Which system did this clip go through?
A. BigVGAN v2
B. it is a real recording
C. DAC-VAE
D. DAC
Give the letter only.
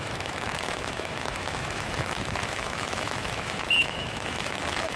C